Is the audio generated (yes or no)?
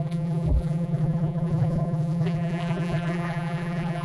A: yes